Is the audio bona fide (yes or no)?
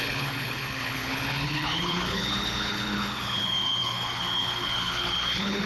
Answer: no